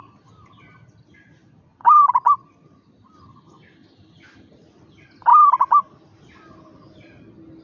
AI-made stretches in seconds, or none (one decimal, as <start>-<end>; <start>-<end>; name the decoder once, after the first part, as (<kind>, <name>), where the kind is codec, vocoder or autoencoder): 0.0-1.4 (vocoder, BigVGAN v2); 2.1-5.3